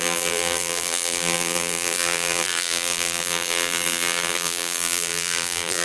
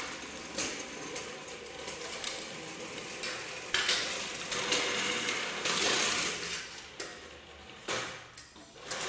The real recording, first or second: second